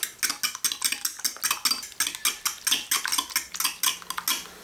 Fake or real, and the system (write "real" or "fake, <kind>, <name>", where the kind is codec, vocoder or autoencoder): real